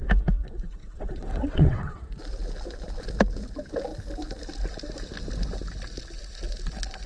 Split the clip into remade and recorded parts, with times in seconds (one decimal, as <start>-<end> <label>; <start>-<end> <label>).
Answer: 0.0-0.8 recorded; 0.8-2.1 remade; 2.1-7.1 recorded